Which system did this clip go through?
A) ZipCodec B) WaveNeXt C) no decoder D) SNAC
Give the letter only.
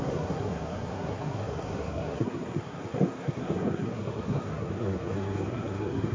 D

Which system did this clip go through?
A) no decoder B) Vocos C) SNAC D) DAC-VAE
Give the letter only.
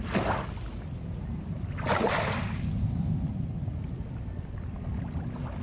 A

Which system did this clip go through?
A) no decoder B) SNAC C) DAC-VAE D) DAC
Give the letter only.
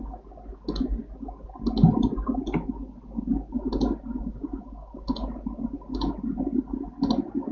A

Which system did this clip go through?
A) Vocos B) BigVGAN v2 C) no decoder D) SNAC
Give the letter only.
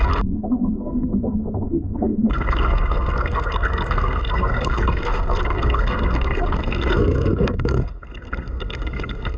D